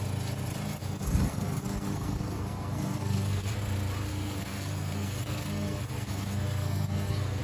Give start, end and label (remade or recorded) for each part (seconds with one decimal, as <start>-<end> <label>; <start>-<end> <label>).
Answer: 0.0-0.8 recorded; 0.8-3.6 remade; 3.6-4.1 recorded; 4.1-7.4 remade